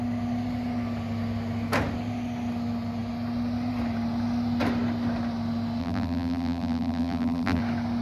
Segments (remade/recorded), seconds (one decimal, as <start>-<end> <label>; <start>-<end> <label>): 0.0-5.8 recorded; 5.8-7.6 remade; 7.6-8.0 recorded